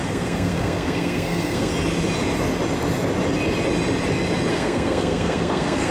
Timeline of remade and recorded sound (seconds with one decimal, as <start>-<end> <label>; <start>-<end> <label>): 0.0-1.7 remade; 1.7-4.5 recorded; 4.5-5.9 remade